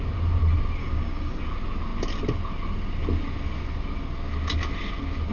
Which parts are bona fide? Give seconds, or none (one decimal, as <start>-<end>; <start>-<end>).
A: 0.0-0.8; 1.4-5.3